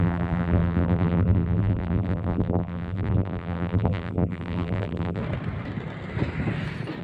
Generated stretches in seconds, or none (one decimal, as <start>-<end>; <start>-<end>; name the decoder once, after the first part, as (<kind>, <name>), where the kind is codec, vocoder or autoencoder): 0.0-5.2 (vocoder, BigVGAN v2)